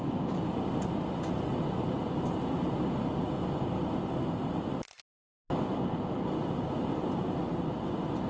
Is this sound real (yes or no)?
yes